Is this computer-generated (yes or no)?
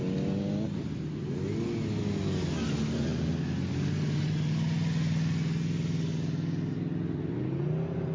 no